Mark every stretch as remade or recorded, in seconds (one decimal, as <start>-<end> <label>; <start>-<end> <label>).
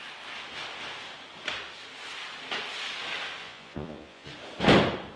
0.0-3.4 recorded; 3.4-4.3 remade; 4.3-5.2 recorded